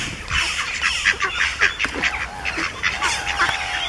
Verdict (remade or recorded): recorded